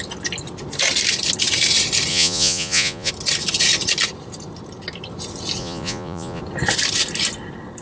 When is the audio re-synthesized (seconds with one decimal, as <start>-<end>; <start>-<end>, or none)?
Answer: 2.1-3.1; 5.6-6.4